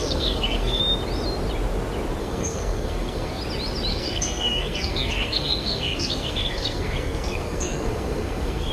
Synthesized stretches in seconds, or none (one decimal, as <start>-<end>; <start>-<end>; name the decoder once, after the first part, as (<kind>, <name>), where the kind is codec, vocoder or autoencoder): 0.0-0.8 (codec, SNAC); 2.2-3.4; 3.9-8.7

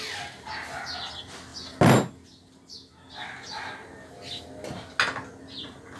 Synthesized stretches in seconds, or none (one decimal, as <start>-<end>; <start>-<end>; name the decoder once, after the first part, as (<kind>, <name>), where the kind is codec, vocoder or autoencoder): none